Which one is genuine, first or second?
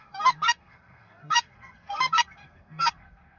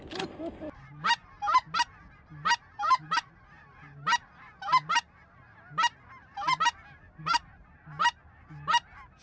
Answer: second